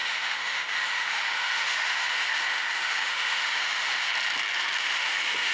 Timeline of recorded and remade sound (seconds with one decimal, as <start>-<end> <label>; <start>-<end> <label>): 0.0-4.1 remade; 4.1-4.8 recorded; 4.8-5.5 remade